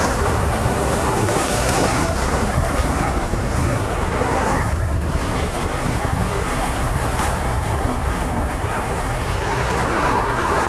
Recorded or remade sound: remade